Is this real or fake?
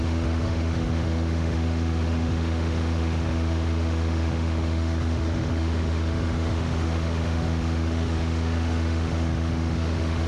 fake